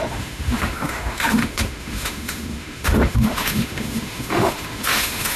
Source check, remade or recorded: remade